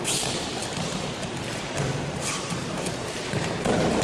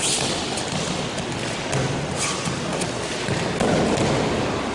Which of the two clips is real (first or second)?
second